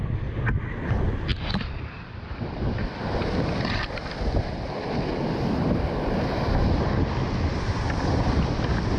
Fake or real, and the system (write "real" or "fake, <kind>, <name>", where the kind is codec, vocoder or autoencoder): real